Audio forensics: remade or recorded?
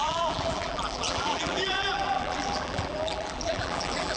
remade